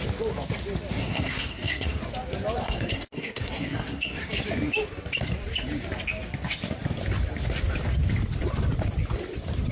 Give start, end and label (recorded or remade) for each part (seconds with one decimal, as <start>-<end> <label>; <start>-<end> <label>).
0.0-1.0 recorded; 1.0-2.0 remade; 2.0-2.6 recorded; 2.6-4.3 remade; 4.3-9.7 recorded